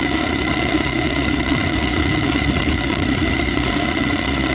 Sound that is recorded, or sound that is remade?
remade